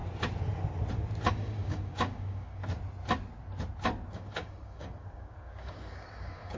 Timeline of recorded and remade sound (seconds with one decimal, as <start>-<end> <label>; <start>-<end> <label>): 0.0-1.3 recorded; 1.3-2.6 remade; 2.6-4.1 recorded; 4.1-6.6 remade